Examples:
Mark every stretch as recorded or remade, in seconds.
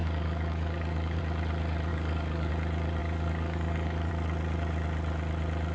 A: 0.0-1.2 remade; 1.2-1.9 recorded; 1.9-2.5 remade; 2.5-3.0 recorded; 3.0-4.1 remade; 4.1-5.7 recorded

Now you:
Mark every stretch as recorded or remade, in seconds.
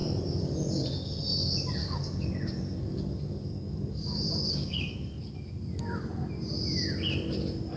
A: 0.0-1.8 recorded; 1.8-5.2 remade; 5.2-7.8 recorded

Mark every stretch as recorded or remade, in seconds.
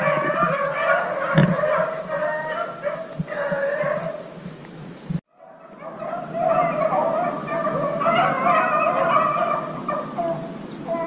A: 0.0-11.1 recorded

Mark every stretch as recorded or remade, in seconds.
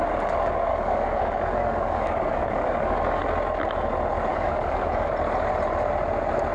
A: 0.0-0.7 recorded; 0.7-3.2 remade; 3.2-4.3 recorded; 4.3-5.1 remade; 5.1-6.5 recorded